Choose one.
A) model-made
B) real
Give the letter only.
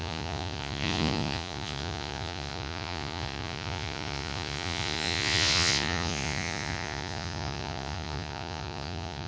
A